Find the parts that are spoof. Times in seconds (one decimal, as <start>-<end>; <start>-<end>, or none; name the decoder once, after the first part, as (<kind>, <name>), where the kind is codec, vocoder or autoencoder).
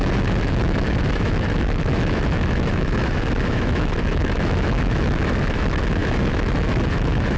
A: 0.0-7.4 (autoencoder, DAC-VAE)